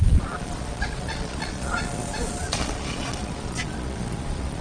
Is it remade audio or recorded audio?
remade